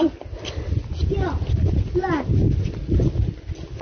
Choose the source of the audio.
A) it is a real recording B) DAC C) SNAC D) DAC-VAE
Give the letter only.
A